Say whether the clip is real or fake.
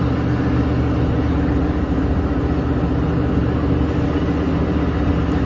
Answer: real